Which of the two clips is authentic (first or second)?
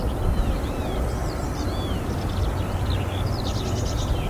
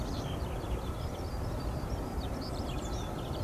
first